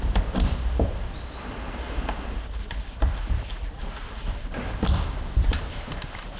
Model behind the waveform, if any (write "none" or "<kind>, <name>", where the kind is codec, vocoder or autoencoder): none